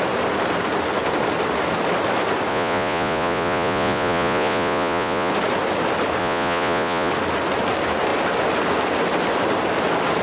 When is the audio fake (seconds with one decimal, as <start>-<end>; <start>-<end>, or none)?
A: 2.5-5.3; 6.2-7.1